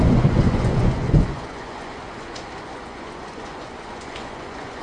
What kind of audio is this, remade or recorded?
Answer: remade